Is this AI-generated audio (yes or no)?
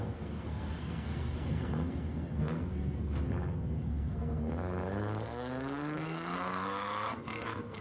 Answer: yes